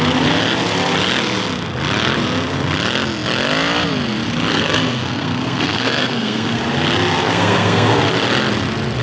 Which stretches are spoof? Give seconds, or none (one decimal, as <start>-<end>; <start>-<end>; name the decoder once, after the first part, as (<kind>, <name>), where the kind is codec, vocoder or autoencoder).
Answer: 4.5-6.6 (codec, SNAC); 7.2-8.0